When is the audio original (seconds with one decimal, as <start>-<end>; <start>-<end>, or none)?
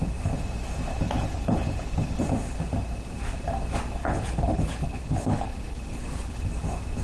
0.0-0.9; 2.2-4.0; 6.5-7.0